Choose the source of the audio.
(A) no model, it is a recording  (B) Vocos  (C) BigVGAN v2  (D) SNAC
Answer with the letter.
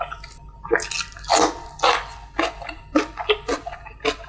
A